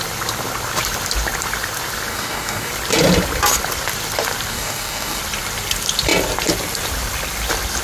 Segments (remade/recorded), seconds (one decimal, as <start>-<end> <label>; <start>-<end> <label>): 0.0-2.1 recorded; 2.1-2.7 remade; 2.7-4.5 recorded; 4.5-5.2 remade; 5.2-7.8 recorded